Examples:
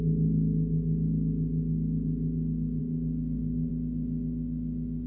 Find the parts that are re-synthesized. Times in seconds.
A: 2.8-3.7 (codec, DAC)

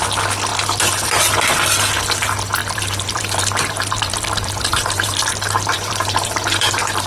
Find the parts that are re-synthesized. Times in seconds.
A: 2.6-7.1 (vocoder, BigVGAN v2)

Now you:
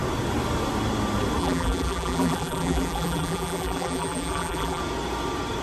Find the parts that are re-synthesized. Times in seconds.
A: 1.4-4.8 (vocoder, BigVGAN v2)